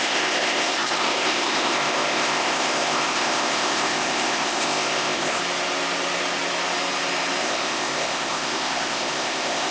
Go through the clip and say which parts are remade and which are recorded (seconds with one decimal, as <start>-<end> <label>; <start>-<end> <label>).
0.0-5.4 remade; 5.4-7.4 recorded; 7.4-9.7 remade